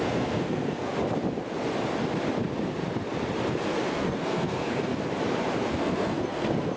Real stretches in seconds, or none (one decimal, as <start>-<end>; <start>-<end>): 0.9-3.9; 4.9-5.7